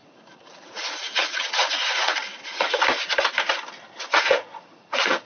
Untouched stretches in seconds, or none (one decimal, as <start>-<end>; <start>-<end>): 2.8-4.1